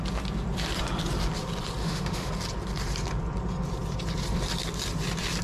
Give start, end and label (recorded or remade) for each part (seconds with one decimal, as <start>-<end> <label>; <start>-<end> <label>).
0.0-1.8 recorded; 1.8-2.3 remade; 2.3-5.4 recorded